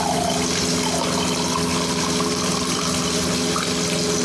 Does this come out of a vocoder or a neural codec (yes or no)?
no